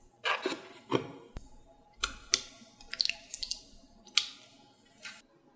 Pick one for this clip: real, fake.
real